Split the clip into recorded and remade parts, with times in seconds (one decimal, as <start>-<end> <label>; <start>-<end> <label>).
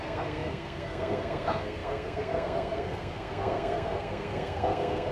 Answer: 0.0-5.1 remade